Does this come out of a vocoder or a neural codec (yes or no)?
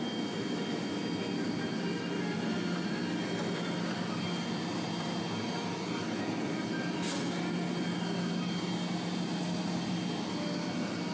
no